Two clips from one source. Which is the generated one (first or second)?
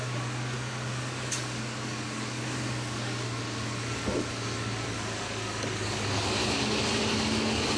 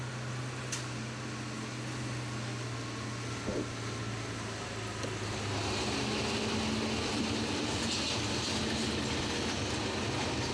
first